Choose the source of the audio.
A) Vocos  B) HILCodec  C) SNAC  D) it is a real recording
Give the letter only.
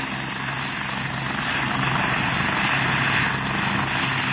D